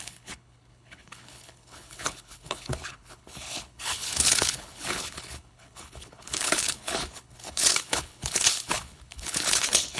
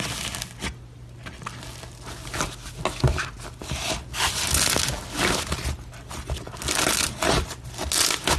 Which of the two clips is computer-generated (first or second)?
first